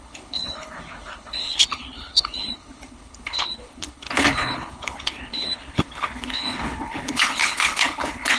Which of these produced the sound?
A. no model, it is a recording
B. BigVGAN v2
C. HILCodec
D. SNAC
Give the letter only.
C